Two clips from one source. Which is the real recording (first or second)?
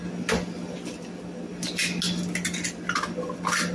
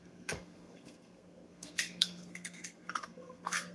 first